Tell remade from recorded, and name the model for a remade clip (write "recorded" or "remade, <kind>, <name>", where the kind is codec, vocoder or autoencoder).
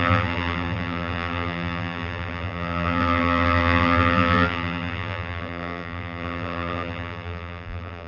remade, vocoder, BigVGAN v2